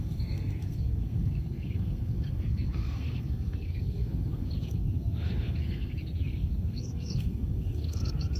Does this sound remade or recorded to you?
remade